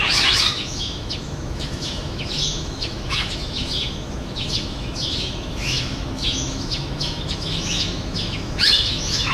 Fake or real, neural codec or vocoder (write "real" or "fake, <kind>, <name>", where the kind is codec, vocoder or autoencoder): fake, autoencoder, DAC-VAE